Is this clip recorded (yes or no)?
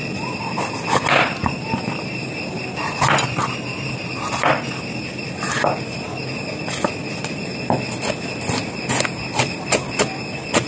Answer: yes